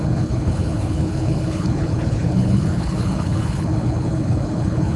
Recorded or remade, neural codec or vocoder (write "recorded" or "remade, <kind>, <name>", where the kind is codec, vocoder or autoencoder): remade, codec, HILCodec